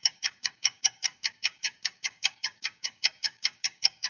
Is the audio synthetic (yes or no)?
yes